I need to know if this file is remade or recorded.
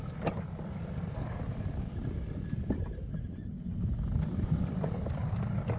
recorded